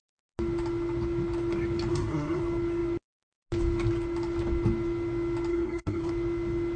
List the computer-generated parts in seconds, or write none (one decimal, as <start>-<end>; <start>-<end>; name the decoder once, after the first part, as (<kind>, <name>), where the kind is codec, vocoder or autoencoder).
1.9-2.4 (codec, SNAC); 5.5-6.1